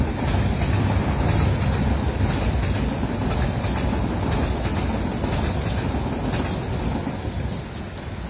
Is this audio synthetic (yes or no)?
no